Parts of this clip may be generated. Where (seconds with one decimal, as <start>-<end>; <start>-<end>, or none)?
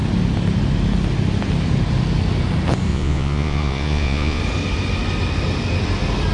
2.9-4.4